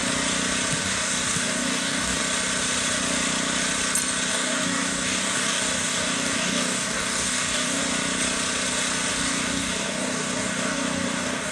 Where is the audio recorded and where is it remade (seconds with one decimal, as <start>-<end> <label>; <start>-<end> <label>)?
0.0-0.8 recorded; 0.8-2.2 remade; 2.2-4.3 recorded; 4.3-7.8 remade; 7.8-9.1 recorded; 9.1-11.5 remade